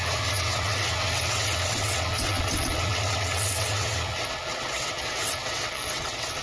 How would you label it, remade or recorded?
remade